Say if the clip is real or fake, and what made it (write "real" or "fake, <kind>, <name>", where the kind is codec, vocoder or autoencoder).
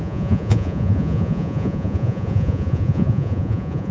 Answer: fake, vocoder, Vocos